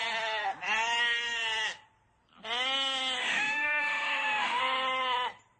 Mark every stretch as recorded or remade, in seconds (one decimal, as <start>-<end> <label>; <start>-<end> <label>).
0.0-3.2 recorded; 3.2-4.6 remade; 4.6-5.6 recorded